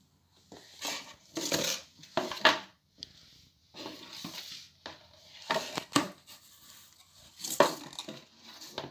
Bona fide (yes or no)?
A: yes